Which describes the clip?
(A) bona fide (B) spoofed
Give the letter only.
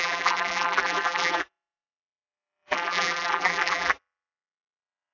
B